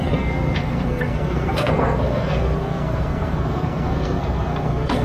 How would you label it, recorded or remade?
remade